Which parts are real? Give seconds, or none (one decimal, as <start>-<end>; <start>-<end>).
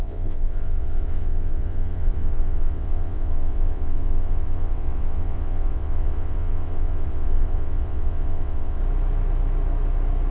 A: 8.8-10.3